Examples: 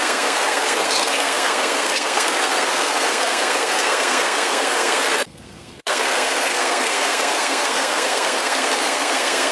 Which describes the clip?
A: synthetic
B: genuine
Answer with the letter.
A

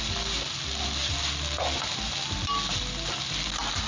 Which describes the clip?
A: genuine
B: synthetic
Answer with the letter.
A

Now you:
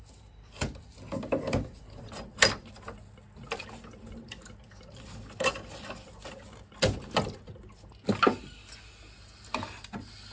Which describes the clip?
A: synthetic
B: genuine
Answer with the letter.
B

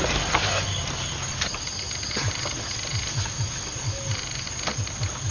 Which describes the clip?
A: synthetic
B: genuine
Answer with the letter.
B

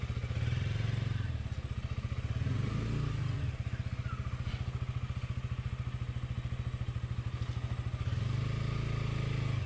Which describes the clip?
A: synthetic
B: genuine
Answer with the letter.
B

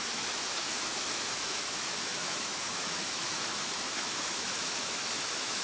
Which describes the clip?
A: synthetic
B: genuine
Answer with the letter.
A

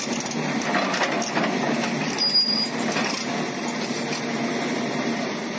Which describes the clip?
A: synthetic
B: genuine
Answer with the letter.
B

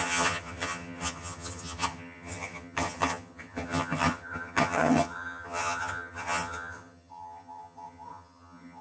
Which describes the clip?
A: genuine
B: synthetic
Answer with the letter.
B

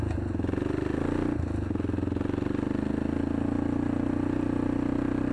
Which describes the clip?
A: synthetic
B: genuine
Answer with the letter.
B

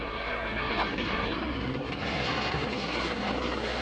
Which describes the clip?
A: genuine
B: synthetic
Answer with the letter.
B